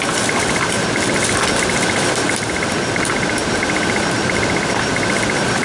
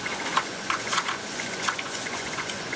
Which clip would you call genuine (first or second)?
first